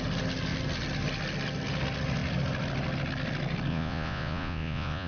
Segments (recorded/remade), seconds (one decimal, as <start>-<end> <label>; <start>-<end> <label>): 0.0-3.7 recorded; 3.7-5.1 remade